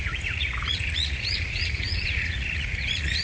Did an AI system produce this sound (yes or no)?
yes